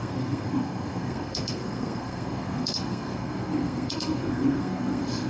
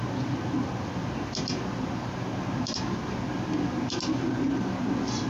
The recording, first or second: second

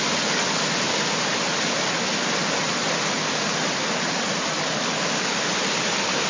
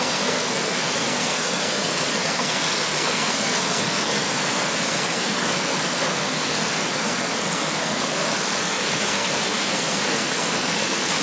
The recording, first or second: first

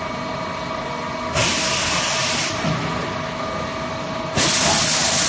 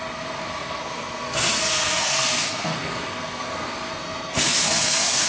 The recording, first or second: first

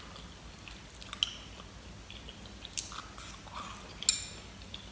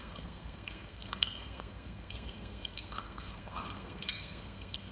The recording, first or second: first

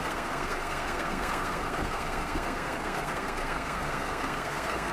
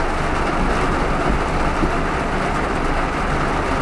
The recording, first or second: second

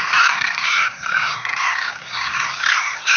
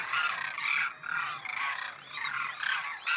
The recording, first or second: second